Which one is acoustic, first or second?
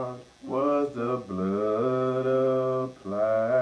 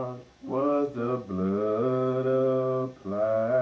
first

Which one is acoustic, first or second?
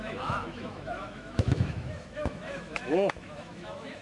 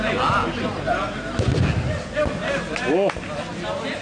second